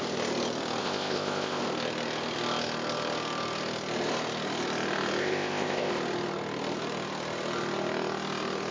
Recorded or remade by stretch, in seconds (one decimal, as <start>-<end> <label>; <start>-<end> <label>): 0.0-0.8 recorded; 0.8-1.6 remade; 1.6-5.2 recorded; 5.2-5.9 remade; 5.9-8.7 recorded